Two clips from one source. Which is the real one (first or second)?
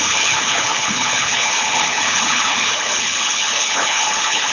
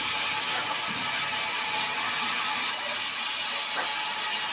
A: second